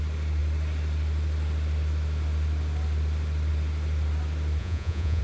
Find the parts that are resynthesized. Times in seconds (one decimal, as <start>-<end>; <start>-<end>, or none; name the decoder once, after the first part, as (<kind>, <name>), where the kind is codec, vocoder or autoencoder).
4.6-5.2 (vocoder, Vocos)